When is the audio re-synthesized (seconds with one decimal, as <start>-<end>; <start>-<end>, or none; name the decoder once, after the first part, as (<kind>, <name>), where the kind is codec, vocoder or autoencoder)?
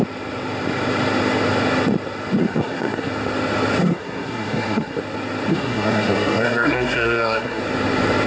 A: 2.4-3.1 (codec, SNAC); 3.8-5.0; 5.5-7.6